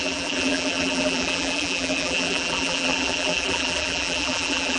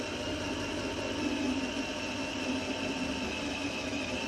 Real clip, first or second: second